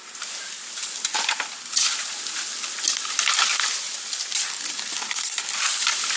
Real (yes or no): yes